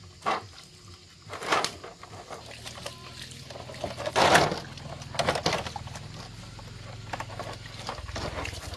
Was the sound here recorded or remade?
recorded